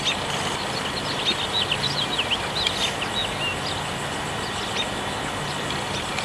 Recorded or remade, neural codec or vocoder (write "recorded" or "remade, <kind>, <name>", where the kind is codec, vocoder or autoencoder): recorded